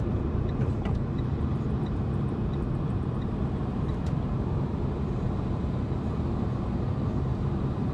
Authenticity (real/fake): fake